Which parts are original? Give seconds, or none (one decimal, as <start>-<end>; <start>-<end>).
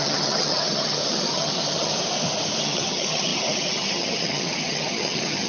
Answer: 1.9-2.6